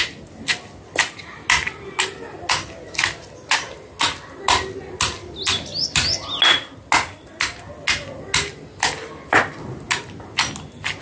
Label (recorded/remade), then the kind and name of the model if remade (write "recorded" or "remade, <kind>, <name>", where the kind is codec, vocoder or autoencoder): recorded